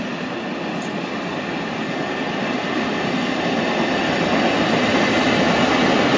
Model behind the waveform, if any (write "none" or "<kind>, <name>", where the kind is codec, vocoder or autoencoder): none